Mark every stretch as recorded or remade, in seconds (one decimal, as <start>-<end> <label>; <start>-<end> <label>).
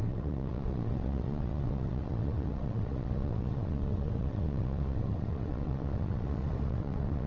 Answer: 0.0-7.3 remade